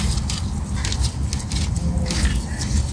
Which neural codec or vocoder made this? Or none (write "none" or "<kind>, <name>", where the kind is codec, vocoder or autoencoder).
none